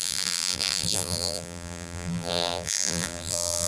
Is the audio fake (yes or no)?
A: yes